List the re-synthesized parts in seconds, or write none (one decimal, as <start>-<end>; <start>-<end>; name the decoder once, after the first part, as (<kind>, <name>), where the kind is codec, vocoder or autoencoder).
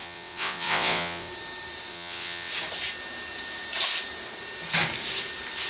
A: 0.0-1.3 (vocoder, WaveNeXt); 1.9-2.5